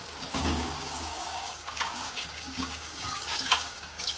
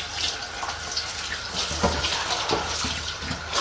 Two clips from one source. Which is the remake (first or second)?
first